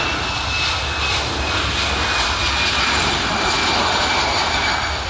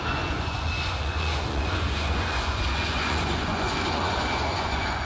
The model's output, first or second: second